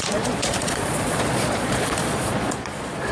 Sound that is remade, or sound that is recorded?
remade